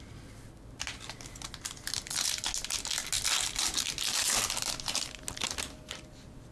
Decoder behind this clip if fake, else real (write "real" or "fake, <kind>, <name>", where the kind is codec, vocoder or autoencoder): real